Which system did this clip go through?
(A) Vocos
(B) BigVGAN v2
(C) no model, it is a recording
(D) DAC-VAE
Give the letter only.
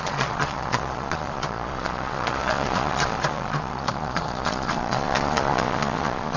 A